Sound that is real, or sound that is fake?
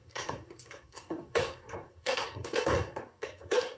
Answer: fake